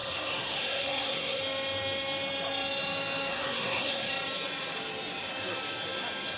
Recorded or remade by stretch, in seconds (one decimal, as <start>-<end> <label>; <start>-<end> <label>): 0.0-1.4 remade; 1.4-3.3 recorded; 3.3-4.1 remade; 4.1-6.4 recorded